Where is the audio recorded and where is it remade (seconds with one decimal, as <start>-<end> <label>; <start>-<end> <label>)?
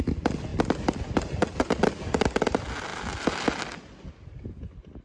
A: 0.0-5.0 recorded